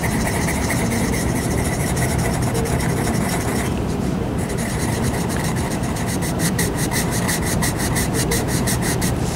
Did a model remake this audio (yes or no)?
yes